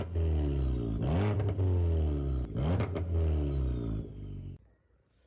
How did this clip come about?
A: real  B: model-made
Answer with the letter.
A